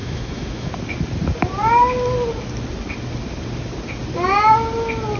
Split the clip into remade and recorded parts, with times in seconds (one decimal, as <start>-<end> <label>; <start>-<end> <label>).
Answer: 0.0-0.7 remade; 0.7-5.2 recorded